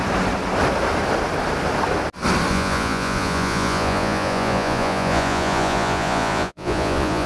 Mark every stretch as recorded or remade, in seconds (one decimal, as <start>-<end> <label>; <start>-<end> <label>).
0.0-2.5 recorded; 2.5-7.3 remade